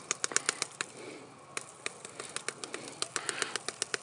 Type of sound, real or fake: real